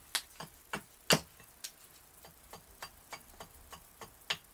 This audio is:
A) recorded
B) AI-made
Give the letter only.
A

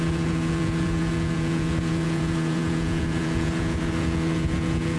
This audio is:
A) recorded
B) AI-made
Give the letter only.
B